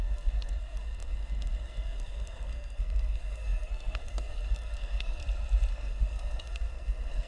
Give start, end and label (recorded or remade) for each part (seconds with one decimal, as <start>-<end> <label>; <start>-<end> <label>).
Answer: 0.0-5.2 remade; 5.2-5.7 recorded; 5.7-7.3 remade